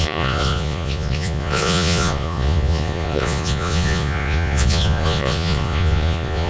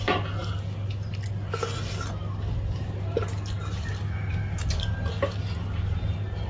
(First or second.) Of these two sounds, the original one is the second